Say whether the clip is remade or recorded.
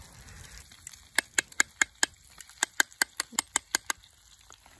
recorded